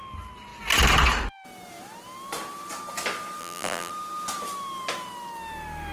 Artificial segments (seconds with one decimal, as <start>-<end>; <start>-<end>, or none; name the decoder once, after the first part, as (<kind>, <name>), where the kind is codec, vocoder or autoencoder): 3.4-3.9 (vocoder, BigVGAN v2)